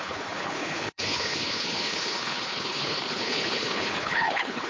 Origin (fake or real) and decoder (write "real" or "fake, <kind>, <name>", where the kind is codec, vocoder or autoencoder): fake, codec, HILCodec